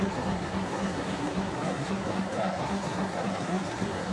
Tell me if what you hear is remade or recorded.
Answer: remade